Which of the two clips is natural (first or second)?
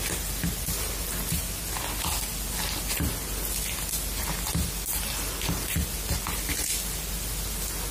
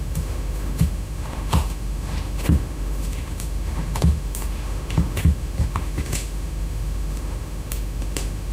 first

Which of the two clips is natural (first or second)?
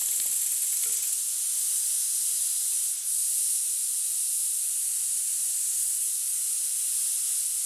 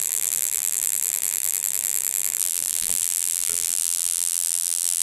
first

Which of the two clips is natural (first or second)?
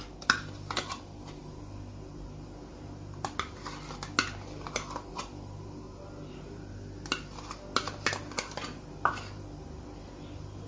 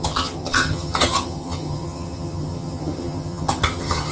first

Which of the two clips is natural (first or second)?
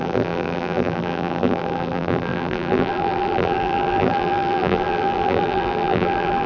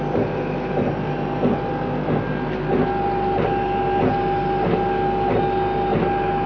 second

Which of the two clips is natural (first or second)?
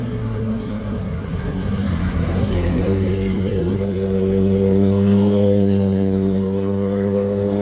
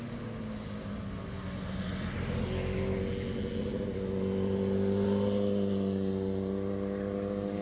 second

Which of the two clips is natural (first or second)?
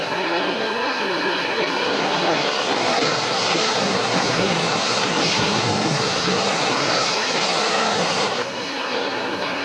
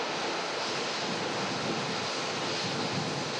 second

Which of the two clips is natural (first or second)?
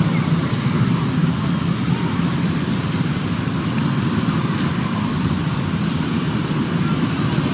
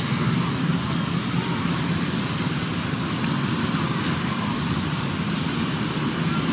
second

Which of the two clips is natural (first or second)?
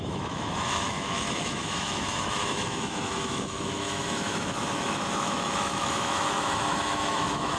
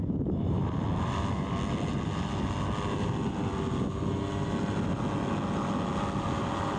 second